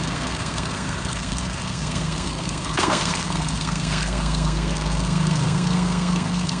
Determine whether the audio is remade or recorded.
remade